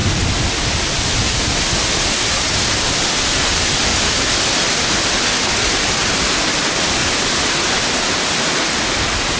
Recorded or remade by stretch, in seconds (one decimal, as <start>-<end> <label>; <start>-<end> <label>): 0.0-7.0 recorded; 7.0-8.5 remade; 8.5-9.4 recorded